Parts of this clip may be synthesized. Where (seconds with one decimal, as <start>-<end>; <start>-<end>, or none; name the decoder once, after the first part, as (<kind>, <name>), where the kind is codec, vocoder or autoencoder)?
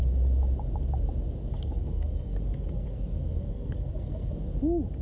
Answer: 1.5-4.3 (codec, SNAC)